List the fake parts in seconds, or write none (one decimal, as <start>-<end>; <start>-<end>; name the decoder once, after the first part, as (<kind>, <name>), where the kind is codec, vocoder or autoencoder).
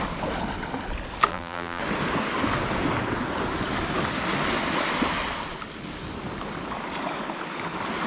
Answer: 1.3-1.8 (vocoder, BigVGAN v2)